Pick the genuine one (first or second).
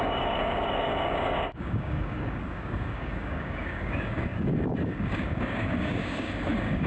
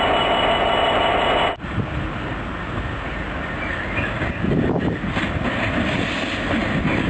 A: second